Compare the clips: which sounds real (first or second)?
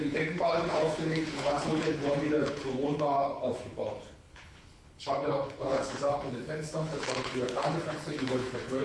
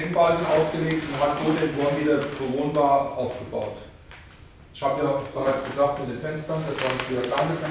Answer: second